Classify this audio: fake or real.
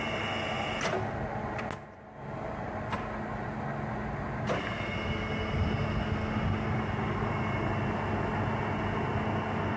real